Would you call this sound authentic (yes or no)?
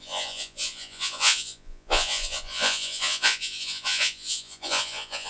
no